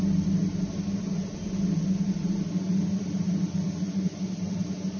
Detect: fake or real real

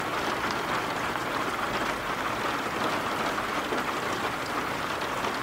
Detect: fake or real real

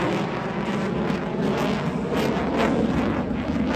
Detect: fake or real real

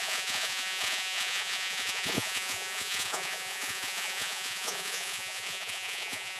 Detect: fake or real fake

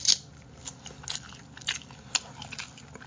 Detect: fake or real real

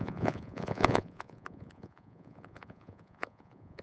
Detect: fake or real fake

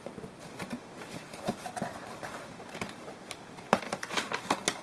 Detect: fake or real real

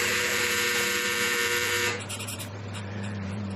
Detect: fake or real fake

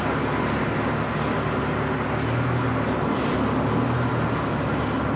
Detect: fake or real real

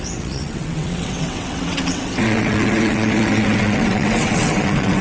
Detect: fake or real fake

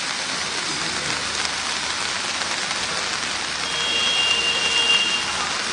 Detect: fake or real real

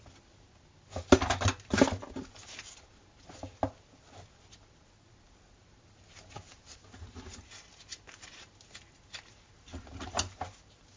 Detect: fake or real real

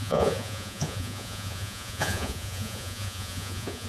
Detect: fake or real fake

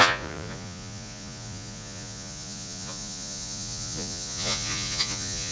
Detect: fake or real fake